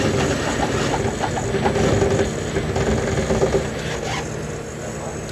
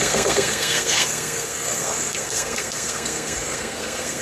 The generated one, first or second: second